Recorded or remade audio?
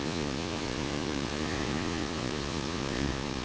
remade